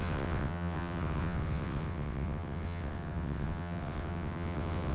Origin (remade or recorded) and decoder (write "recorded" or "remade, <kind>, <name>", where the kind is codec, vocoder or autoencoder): remade, vocoder, WaveNeXt